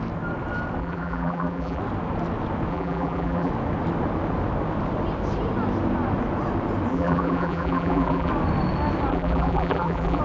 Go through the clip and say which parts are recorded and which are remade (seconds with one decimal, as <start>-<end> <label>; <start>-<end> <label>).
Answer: 0.0-0.8 recorded; 0.8-1.8 remade; 1.8-2.7 recorded; 2.7-3.5 remade; 3.5-6.9 recorded; 6.9-8.3 remade; 8.3-9.1 recorded; 9.1-10.2 remade